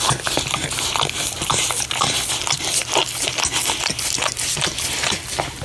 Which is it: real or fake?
real